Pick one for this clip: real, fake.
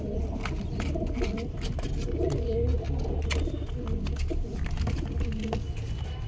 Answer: real